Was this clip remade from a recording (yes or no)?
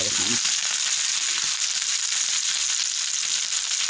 no